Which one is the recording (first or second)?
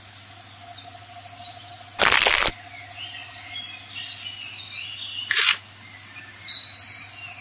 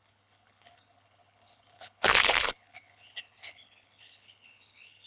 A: first